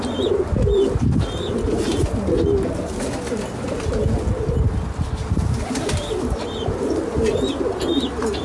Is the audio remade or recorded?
recorded